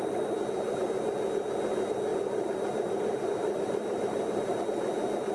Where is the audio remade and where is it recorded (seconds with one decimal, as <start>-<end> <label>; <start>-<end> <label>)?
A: 0.0-2.1 recorded; 2.1-4.6 remade; 4.6-5.3 recorded